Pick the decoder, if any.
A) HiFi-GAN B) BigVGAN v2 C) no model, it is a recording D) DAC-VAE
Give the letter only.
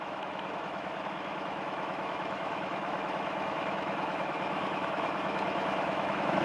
D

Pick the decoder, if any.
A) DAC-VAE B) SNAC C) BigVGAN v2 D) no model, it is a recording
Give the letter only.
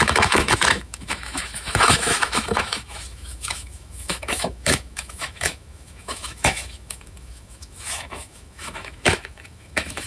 A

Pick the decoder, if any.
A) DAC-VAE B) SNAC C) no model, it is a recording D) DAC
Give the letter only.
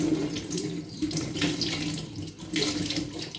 C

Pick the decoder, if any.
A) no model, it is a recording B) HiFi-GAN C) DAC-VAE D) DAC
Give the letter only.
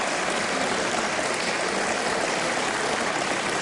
A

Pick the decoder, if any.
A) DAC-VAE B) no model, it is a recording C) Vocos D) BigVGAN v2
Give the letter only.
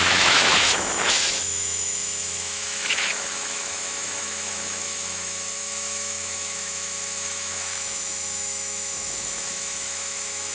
A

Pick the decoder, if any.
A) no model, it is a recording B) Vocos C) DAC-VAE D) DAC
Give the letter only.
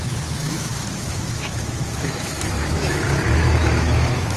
C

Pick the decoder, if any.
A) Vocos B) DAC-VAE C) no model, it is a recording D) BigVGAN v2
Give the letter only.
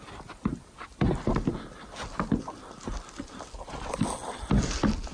C